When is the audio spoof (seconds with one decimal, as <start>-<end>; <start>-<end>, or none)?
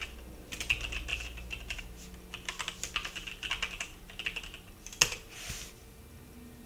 none